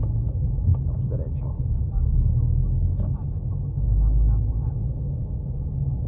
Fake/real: real